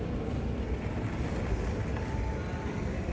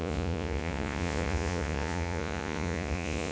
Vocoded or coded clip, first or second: second